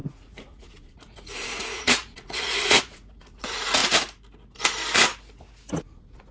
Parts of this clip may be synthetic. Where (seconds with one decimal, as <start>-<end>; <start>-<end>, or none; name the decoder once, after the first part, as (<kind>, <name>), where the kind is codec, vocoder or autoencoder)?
0.0-3.8 (vocoder, Vocos); 5.7-6.3